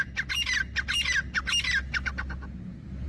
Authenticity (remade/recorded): recorded